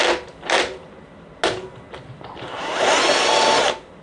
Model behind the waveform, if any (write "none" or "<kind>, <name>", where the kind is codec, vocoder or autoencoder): none